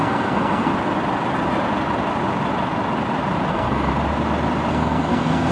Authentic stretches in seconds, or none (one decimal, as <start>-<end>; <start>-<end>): 0.7-3.5; 3.9-4.7